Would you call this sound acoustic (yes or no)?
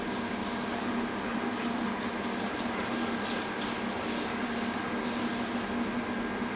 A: yes